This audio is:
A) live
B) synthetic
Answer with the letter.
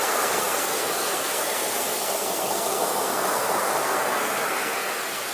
B